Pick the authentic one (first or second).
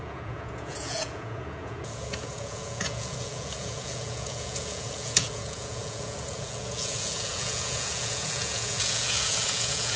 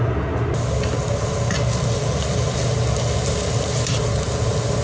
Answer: second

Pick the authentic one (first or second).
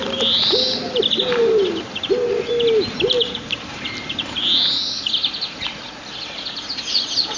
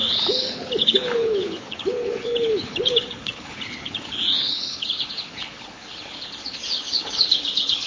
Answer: first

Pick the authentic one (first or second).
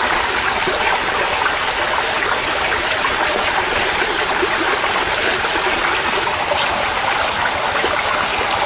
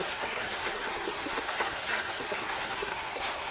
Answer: first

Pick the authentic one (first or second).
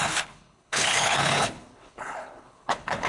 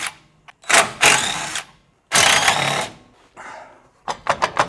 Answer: second